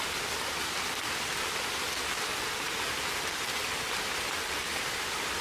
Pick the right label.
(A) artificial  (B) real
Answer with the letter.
B